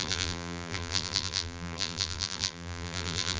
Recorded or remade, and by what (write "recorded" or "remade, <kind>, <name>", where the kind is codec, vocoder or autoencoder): remade, vocoder, BigVGAN v2